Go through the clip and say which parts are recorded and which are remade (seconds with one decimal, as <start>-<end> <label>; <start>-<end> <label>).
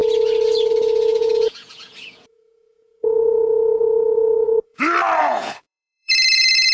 0.0-1.1 recorded; 1.1-4.8 remade; 4.8-5.2 recorded; 5.2-6.7 remade